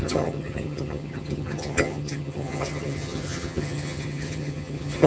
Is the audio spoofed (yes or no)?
yes